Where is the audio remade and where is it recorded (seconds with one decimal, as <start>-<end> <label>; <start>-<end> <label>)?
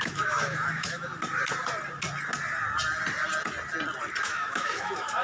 0.0-1.1 remade; 1.1-4.2 recorded; 4.2-5.2 remade